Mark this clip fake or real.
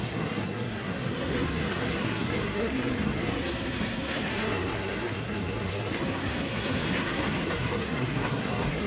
fake